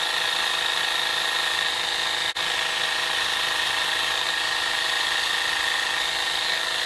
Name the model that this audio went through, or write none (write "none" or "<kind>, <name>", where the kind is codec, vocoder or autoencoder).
none